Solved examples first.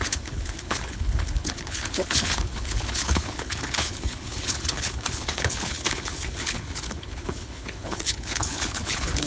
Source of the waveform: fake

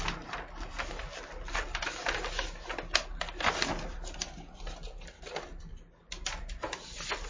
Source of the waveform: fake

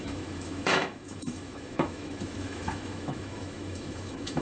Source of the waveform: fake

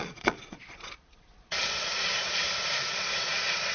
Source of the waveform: fake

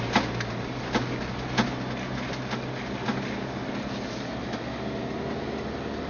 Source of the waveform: real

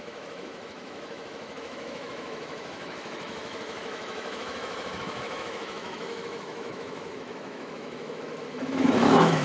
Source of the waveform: fake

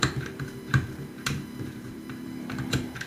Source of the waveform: fake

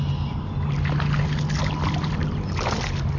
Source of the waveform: real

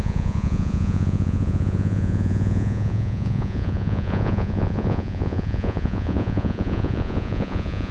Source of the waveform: fake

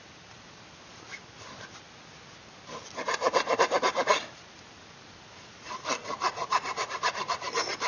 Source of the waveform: real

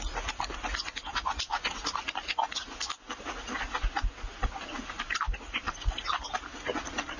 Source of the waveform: real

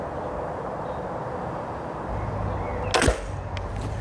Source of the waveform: real